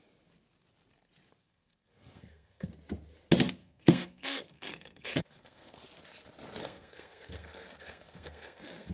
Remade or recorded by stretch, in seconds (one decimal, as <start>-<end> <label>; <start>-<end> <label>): 0.0-1.4 recorded; 1.4-2.7 remade; 2.7-3.6 recorded; 3.6-5.8 remade; 5.8-6.6 recorded; 6.6-8.9 remade